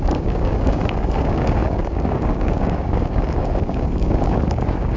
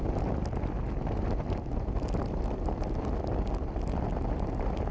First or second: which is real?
second